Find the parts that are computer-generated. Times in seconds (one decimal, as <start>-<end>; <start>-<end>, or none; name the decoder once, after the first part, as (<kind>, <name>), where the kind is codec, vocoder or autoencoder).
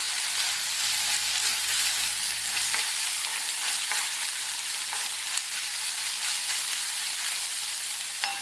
none